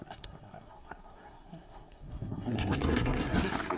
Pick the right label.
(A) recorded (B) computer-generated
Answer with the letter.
B